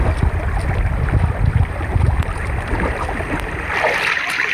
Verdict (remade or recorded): recorded